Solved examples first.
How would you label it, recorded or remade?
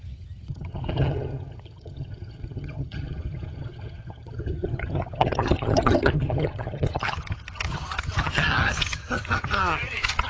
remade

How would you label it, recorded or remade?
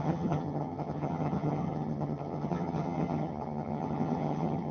remade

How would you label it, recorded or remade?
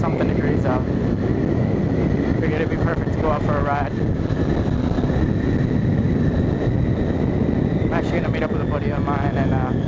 recorded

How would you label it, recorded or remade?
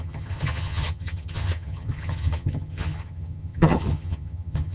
remade